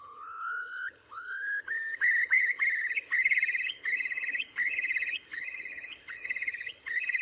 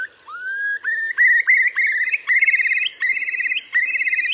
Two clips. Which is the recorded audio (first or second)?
second